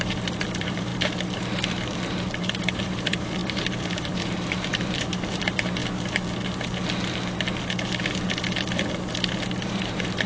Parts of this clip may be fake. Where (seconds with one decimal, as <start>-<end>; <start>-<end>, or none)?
0.0-0.9; 2.4-5.8; 9.6-10.3